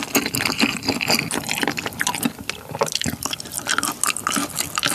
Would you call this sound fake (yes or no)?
no